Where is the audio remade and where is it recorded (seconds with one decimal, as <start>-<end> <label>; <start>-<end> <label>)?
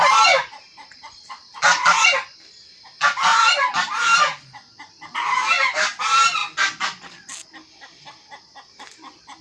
0.0-9.4 recorded